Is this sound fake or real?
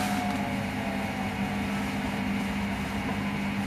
real